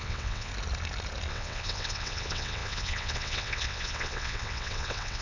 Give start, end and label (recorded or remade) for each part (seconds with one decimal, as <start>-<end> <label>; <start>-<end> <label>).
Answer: 0.0-0.5 remade; 0.5-1.3 recorded; 1.3-5.2 remade